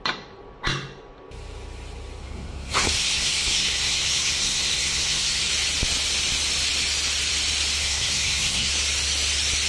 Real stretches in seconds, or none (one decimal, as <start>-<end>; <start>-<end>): 0.0-2.2; 5.5-7.8; 8.7-9.7